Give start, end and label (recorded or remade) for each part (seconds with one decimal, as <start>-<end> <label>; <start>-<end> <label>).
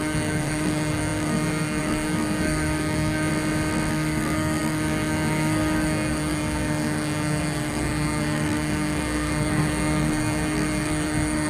0.0-3.3 remade; 3.3-3.9 recorded; 3.9-11.5 remade